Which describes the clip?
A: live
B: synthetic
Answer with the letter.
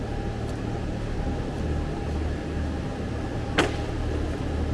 A